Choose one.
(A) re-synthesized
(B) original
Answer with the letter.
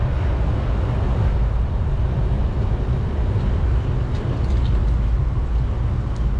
B